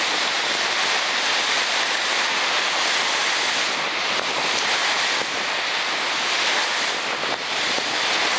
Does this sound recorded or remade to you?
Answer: recorded